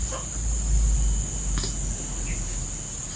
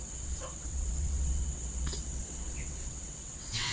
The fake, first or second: second